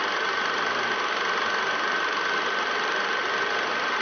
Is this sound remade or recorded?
recorded